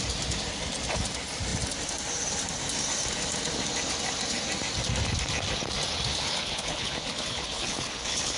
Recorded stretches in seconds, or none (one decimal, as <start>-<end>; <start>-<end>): 0.0-6.1